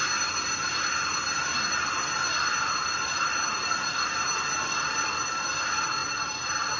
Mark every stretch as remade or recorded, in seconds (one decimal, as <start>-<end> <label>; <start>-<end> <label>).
0.0-6.8 recorded